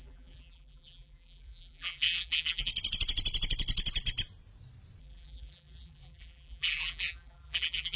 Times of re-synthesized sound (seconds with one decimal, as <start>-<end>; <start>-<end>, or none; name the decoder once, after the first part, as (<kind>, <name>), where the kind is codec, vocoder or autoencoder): 0.0-2.7 (vocoder, BigVGAN v2); 5.0-8.0

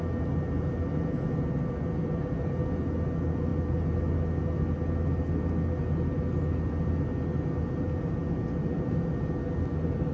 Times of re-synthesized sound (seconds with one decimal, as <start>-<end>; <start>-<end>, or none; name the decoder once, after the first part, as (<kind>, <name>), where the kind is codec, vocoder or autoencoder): none

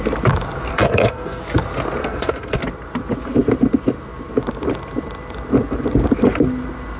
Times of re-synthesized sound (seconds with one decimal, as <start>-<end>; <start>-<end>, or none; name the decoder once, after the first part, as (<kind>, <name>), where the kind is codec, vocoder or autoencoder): 0.7-1.4 (codec, SNAC); 2.0-2.6

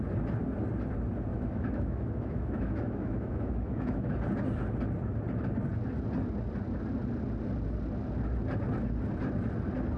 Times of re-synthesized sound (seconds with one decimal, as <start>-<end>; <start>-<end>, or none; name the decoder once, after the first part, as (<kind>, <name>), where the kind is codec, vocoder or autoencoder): 1.3-4.1 (autoencoder, DAC-VAE)

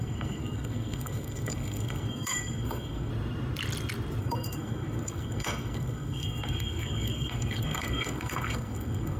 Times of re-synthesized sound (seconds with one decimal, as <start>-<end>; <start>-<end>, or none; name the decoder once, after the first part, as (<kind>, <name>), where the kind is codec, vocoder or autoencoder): 0.0-3.1 (codec, SNAC); 4.2-9.2

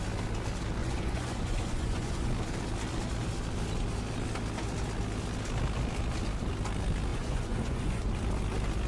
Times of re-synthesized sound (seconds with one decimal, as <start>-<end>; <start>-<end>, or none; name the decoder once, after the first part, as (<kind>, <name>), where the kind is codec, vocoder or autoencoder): 0.8-2.3 (vocoder, Vocos); 7.1-8.0

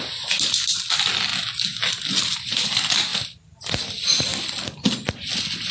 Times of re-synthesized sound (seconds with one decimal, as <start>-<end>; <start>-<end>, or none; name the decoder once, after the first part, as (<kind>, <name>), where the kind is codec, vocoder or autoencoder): none

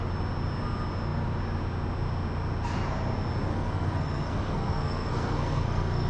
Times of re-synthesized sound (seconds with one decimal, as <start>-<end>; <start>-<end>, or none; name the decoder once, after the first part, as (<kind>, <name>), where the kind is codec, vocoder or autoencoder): 3.5-6.1 (codec, SNAC)